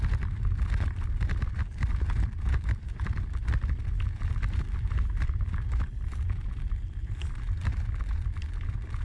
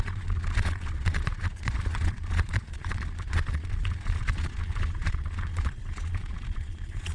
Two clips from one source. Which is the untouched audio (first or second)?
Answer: first